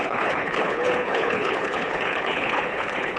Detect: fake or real fake